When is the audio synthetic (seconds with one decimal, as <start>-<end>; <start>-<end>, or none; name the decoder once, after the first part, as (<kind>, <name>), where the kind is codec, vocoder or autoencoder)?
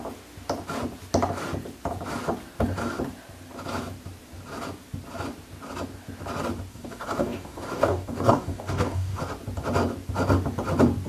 6.7-9.2 (codec, DAC)